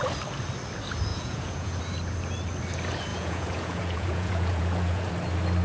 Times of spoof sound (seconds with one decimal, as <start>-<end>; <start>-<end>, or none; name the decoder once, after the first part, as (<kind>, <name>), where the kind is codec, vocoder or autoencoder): 1.1-1.8 (vocoder, Vocos); 3.1-5.1